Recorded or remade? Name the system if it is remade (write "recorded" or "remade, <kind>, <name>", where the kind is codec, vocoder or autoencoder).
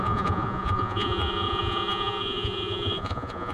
remade, vocoder, Vocos